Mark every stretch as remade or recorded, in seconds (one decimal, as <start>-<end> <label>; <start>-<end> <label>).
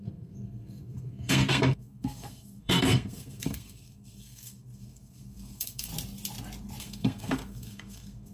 0.0-5.9 remade; 5.9-6.8 recorded; 6.8-8.3 remade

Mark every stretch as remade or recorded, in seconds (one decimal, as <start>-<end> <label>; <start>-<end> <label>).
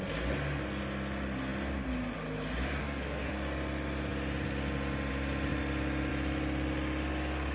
0.0-2.8 recorded; 2.8-3.3 remade; 3.3-7.5 recorded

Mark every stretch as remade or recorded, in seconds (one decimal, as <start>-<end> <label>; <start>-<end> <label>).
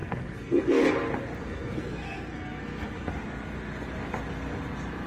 0.0-0.9 remade; 0.9-1.4 recorded; 1.4-3.1 remade; 3.1-5.1 recorded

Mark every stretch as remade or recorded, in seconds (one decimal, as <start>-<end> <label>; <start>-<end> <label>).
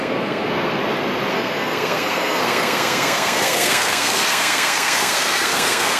0.0-0.8 remade; 0.8-1.3 recorded; 1.3-6.0 remade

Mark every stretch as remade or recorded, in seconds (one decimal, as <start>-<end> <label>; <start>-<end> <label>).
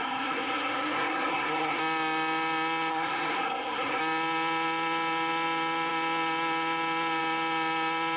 0.0-1.8 remade; 1.8-2.9 recorded; 2.9-4.0 remade; 4.0-8.2 recorded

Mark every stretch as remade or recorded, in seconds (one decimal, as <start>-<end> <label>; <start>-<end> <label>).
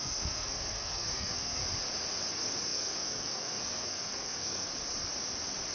0.0-1.6 remade; 1.6-2.3 recorded; 2.3-4.7 remade; 4.7-5.7 recorded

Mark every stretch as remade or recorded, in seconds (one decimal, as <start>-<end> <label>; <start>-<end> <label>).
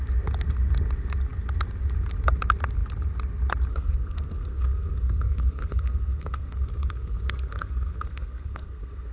0.0-3.7 recorded; 3.7-9.1 remade